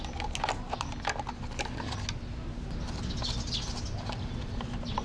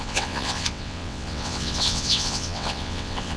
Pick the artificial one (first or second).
second